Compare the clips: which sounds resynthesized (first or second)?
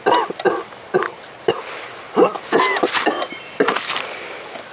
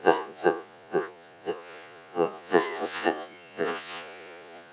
second